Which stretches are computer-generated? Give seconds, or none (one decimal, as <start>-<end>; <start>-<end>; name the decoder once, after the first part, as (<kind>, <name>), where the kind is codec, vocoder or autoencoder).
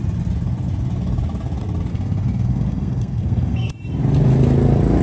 1.9-3.7 (codec, SNAC)